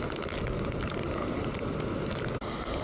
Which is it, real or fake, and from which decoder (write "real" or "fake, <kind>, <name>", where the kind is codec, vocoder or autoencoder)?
real